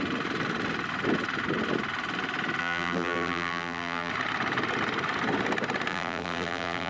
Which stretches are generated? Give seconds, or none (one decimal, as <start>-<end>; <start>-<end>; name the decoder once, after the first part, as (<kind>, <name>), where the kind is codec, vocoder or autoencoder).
2.6-4.1 (vocoder, BigVGAN v2); 5.9-6.9